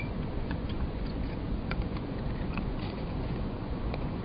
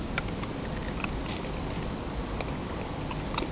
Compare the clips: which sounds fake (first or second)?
first